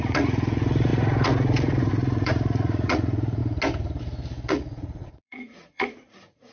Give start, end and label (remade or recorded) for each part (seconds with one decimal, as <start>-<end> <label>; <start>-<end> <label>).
0.0-3.4 remade; 3.4-4.5 recorded; 4.5-6.5 remade